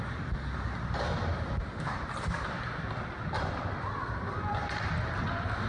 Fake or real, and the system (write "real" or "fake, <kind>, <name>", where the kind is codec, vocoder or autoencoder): real